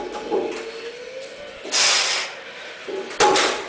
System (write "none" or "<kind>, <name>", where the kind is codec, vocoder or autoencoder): none